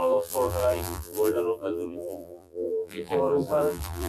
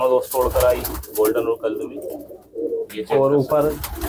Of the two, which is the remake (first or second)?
first